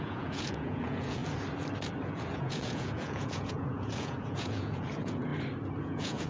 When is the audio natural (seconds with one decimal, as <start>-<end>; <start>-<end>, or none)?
1.2-2.0; 5.3-5.8